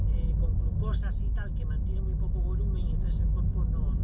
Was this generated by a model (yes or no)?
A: no